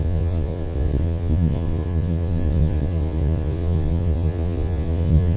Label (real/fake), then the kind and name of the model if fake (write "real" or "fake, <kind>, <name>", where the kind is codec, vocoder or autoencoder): fake, vocoder, Vocos